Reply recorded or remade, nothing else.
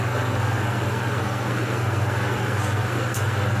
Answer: remade